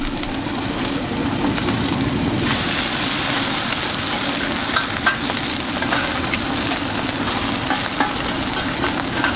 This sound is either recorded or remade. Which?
recorded